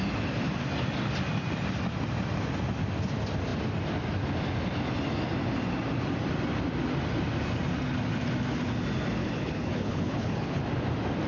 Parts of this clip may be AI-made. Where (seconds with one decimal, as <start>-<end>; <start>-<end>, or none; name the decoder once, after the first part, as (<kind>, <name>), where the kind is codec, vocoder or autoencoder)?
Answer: 9.2-10.6 (codec, HILCodec)